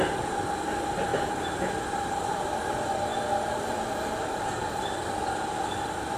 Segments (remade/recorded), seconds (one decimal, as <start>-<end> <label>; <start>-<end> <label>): 0.0-6.2 recorded